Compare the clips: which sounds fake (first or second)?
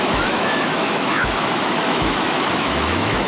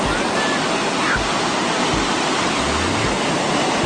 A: first